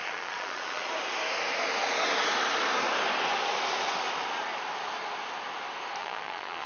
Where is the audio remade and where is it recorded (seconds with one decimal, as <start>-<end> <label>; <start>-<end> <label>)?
0.0-0.9 remade; 0.9-6.0 recorded; 6.0-6.7 remade